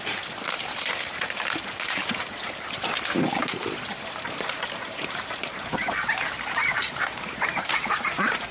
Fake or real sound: fake